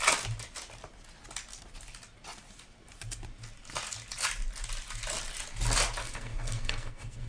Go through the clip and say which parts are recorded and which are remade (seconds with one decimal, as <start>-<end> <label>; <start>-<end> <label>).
0.0-6.0 recorded; 6.0-7.3 remade